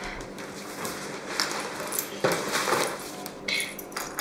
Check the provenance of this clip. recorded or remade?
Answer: remade